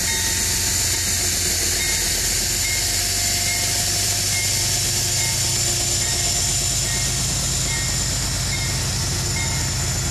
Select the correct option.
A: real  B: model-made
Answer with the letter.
A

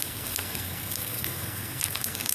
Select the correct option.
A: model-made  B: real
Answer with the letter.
A